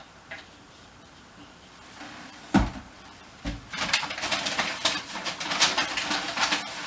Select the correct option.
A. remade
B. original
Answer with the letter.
A